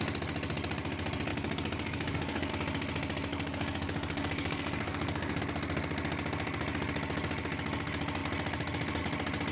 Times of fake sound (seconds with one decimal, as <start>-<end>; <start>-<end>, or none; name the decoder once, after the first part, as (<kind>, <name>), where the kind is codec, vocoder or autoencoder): 1.3-2.5 (codec, DAC); 3.3-5.4